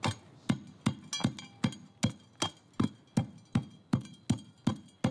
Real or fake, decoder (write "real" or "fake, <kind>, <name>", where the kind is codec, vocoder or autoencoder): real